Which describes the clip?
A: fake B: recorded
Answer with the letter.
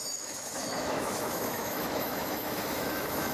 A